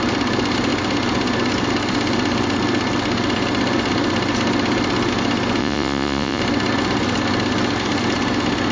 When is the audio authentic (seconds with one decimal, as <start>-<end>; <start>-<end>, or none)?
0.0-5.6; 6.4-8.7